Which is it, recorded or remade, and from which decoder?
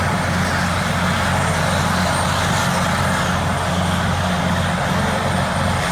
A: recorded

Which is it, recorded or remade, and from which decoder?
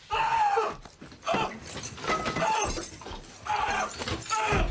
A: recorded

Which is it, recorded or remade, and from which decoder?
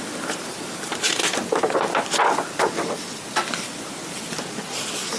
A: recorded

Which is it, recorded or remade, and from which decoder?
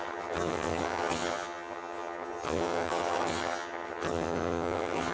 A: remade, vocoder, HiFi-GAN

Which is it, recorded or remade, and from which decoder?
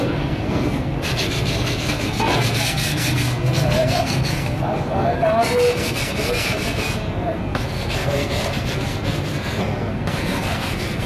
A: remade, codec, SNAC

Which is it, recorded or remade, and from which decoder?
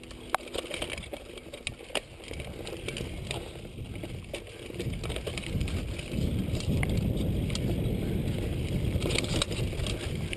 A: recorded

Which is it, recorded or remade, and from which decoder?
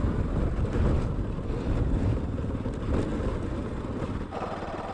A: recorded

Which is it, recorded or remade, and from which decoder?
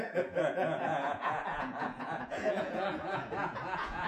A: remade, vocoder, Vocos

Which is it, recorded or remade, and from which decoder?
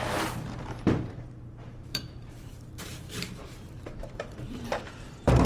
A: remade, vocoder, BigVGAN v2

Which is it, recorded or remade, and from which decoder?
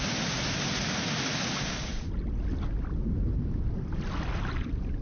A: recorded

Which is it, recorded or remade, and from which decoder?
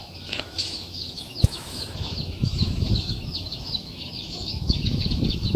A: remade, autoencoder, DAC-VAE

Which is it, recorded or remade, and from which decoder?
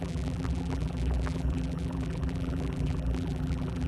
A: remade, vocoder, BigVGAN v2